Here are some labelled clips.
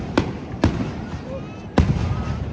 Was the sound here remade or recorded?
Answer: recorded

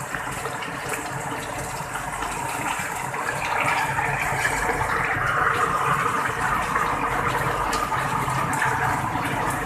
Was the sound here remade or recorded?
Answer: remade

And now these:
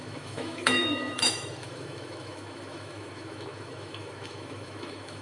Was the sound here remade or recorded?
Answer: remade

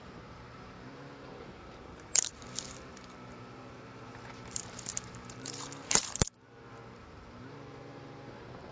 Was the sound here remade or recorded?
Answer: remade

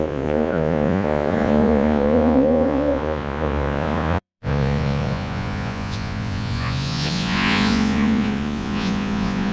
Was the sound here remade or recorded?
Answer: remade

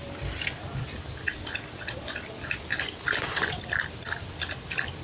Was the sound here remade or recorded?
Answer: remade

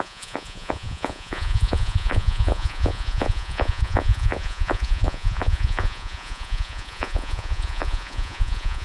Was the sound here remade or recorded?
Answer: remade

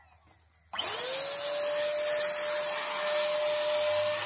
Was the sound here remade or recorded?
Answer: recorded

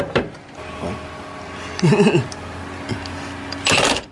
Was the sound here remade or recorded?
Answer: recorded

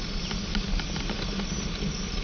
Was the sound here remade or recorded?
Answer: remade